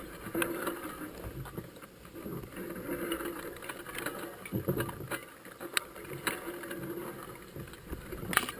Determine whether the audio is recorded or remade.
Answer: recorded